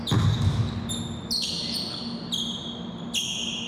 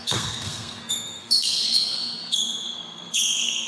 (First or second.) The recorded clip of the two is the first